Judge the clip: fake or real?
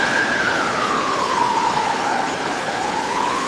fake